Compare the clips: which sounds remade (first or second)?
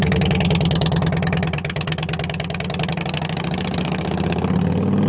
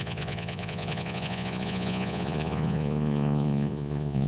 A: second